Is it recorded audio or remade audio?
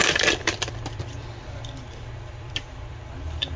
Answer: remade